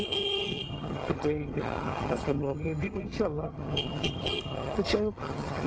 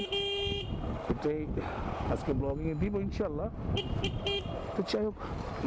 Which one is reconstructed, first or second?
first